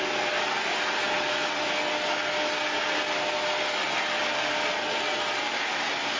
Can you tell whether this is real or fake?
real